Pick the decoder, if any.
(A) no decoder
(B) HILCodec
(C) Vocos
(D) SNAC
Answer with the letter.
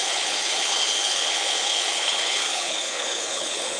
B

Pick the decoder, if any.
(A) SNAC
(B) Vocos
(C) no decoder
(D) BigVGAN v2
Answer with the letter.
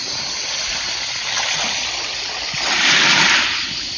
C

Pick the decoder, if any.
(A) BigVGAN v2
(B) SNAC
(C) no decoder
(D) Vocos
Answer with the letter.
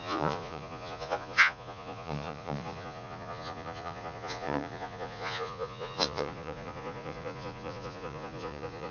D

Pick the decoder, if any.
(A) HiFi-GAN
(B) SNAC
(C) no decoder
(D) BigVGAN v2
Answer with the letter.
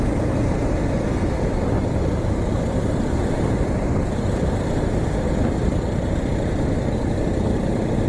C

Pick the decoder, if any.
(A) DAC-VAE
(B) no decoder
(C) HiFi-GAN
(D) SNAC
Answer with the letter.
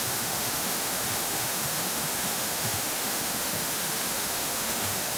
A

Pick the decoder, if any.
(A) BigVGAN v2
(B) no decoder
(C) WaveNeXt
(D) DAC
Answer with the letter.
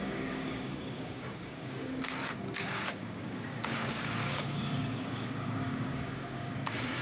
D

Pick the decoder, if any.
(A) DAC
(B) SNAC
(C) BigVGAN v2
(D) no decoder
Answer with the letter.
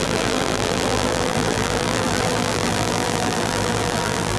C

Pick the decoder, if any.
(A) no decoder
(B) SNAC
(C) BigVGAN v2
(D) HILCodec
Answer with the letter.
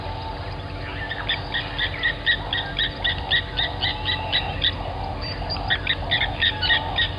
A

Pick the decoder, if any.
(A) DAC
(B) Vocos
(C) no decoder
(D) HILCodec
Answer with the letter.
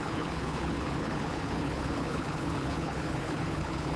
D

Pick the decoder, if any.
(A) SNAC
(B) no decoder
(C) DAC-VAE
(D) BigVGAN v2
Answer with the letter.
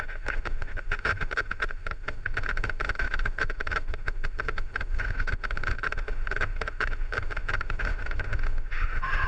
C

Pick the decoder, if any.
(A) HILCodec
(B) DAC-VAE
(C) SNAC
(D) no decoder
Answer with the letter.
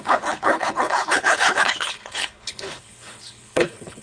A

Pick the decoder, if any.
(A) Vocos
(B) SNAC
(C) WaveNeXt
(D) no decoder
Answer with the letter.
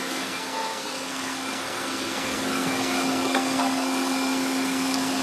B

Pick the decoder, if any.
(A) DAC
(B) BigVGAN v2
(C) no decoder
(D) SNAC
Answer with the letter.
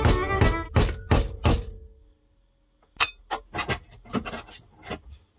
C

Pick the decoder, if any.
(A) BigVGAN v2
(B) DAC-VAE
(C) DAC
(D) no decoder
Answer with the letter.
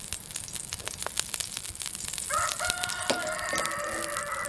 D